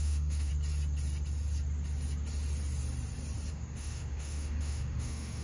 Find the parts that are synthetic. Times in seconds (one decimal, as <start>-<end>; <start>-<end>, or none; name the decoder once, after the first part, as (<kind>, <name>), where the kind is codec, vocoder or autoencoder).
0.0-0.5 (autoencoder, DAC-VAE); 3.5-5.4